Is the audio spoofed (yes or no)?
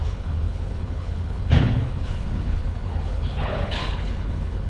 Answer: yes